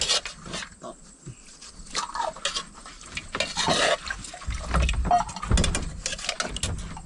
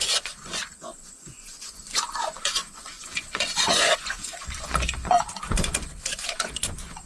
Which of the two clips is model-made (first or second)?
second